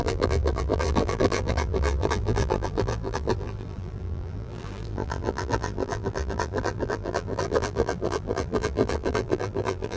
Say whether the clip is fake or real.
fake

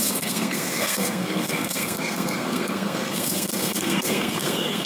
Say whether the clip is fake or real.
fake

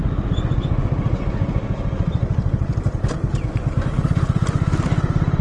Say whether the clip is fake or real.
fake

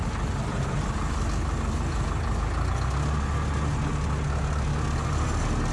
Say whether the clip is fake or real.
real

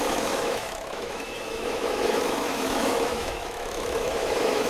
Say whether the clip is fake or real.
fake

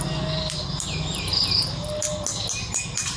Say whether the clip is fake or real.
real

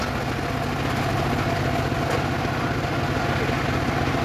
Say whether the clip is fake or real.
real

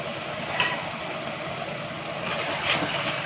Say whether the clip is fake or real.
real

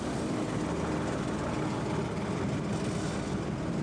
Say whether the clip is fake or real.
real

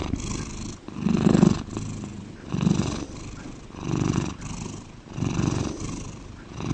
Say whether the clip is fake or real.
real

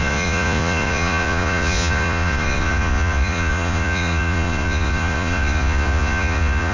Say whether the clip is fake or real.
fake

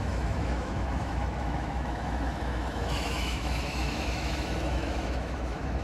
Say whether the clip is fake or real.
fake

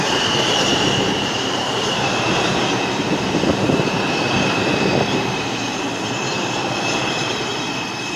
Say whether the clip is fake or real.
fake